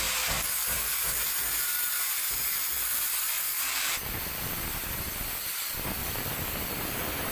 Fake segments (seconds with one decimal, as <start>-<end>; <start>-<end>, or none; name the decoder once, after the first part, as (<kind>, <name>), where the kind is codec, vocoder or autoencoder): 1.7-2.4 (vocoder, BigVGAN v2); 2.9-4.5; 6.0-6.7

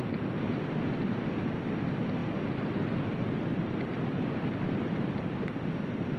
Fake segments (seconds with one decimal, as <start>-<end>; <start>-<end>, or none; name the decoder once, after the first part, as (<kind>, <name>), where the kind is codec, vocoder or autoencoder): 2.2-5.4 (vocoder, BigVGAN v2)

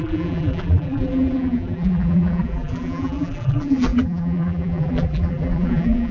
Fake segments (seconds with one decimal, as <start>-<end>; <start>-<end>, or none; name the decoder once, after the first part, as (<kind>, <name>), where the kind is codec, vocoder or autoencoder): 0.0-6.1 (vocoder, BigVGAN v2)

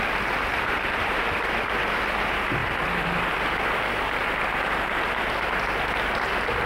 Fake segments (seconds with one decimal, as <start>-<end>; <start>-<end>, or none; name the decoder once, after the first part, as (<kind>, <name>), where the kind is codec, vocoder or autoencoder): 0.5-1.2 (vocoder, BigVGAN v2)

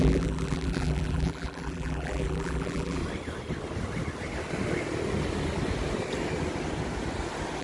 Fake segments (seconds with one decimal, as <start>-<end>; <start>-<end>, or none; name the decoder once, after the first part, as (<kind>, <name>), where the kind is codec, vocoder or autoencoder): 0.0-3.0 (vocoder, BigVGAN v2)

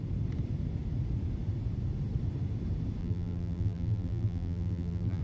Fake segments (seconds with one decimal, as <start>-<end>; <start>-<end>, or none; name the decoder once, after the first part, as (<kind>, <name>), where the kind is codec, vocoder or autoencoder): 3.0-5.2 (vocoder, BigVGAN v2)